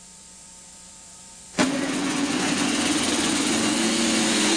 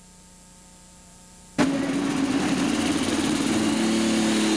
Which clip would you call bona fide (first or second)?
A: second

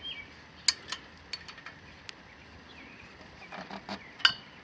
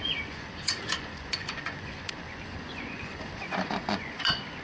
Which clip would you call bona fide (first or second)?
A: first